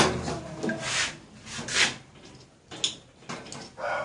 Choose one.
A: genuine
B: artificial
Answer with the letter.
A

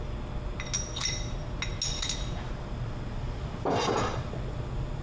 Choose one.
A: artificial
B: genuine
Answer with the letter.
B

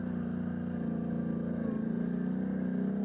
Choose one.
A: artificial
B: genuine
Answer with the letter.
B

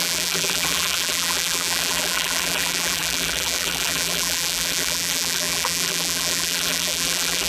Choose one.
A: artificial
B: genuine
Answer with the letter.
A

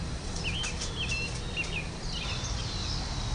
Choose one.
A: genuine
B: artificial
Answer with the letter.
A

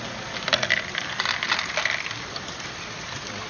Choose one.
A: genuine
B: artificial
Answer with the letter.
A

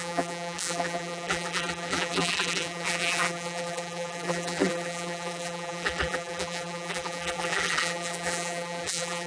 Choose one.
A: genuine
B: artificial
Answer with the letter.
B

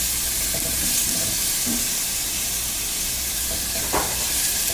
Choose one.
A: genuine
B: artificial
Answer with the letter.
B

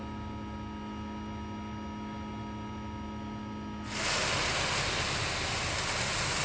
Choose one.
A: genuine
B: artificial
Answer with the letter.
A